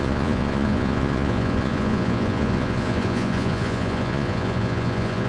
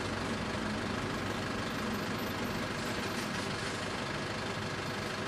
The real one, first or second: second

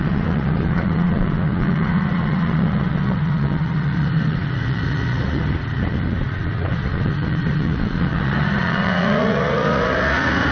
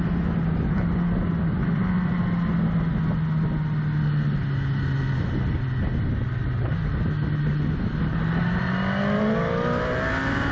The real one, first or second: second